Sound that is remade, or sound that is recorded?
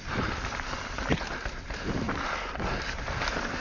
remade